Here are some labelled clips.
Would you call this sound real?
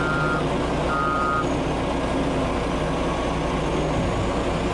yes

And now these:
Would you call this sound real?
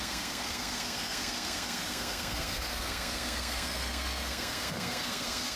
no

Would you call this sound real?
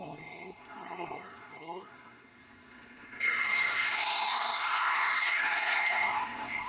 no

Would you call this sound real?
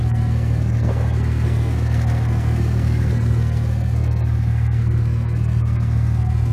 no